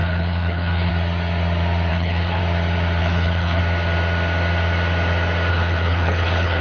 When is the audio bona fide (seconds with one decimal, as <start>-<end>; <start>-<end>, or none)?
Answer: 0.9-1.9; 2.4-3.0; 3.6-5.5